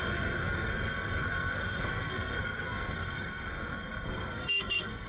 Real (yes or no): no